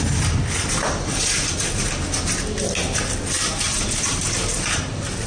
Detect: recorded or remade recorded